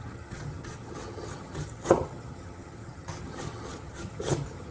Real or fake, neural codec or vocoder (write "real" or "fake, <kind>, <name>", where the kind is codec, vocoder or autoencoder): fake, vocoder, HiFi-GAN